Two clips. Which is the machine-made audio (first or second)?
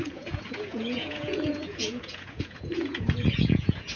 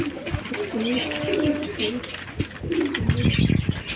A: first